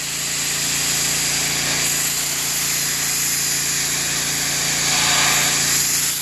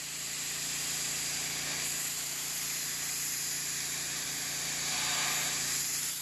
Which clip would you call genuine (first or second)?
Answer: first